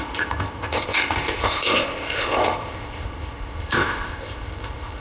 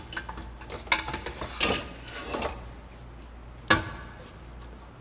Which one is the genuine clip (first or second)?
second